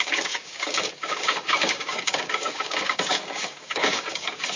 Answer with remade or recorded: remade